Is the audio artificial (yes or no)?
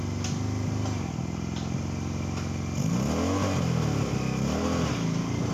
no